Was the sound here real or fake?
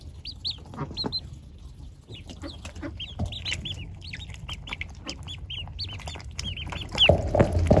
real